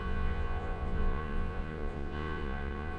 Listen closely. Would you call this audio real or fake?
fake